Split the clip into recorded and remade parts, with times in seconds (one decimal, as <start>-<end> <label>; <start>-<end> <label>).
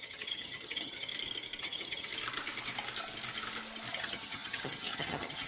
0.0-1.1 remade; 1.1-1.6 recorded; 1.6-2.1 remade; 2.1-3.9 recorded; 3.9-5.5 remade